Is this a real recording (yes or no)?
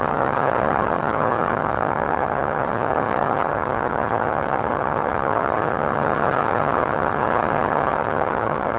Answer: no